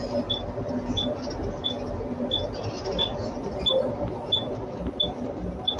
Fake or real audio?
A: real